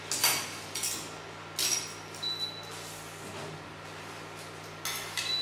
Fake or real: real